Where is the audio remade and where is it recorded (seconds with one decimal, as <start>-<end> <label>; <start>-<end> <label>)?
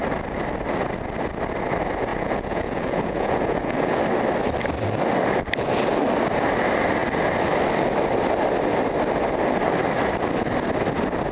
0.0-2.1 recorded; 2.1-4.0 remade; 4.0-11.3 recorded